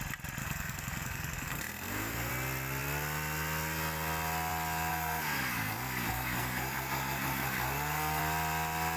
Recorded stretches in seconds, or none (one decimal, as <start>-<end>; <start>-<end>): 0.0-0.4; 2.3-4.9; 8.2-9.0